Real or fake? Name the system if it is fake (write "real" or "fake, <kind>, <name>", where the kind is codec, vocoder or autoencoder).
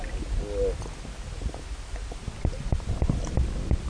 real